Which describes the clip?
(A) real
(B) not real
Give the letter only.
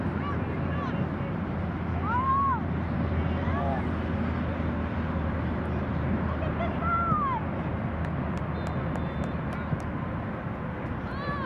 A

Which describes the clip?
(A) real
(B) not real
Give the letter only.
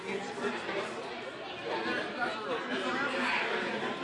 A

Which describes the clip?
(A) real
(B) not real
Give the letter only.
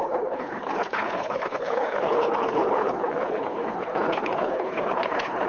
B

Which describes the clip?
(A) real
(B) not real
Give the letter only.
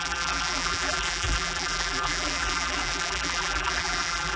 B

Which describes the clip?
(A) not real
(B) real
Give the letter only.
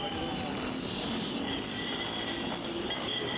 B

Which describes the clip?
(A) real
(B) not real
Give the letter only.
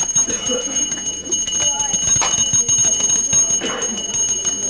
A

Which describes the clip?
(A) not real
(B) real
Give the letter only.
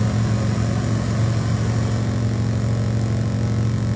B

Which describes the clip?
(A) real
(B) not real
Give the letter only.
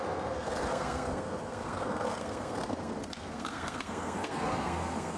B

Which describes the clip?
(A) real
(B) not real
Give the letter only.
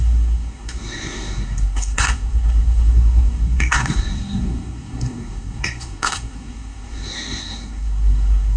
B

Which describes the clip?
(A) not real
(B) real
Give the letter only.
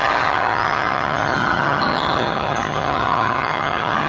A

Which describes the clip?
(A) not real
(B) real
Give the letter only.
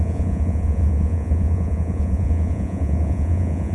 A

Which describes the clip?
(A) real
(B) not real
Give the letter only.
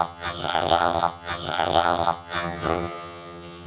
B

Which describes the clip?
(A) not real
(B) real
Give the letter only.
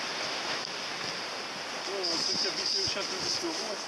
B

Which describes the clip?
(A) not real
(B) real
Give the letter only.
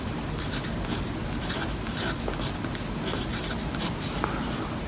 B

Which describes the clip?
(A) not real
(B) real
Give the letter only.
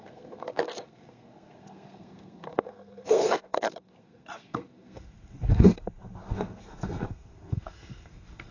A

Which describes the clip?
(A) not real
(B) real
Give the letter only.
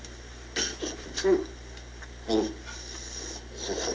B